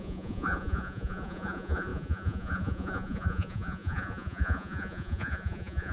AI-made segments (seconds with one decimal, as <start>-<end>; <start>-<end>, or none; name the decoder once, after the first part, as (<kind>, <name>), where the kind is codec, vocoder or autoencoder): 0.0-5.9 (vocoder, Vocos)